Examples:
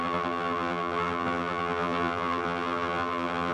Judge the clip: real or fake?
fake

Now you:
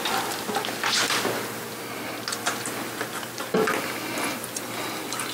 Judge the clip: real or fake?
real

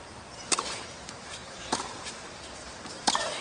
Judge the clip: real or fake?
fake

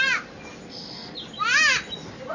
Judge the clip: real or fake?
real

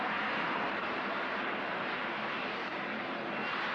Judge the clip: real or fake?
fake